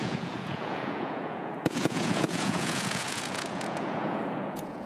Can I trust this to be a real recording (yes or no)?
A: no